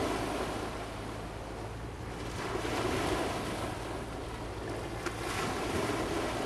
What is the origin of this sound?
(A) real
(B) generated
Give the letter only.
A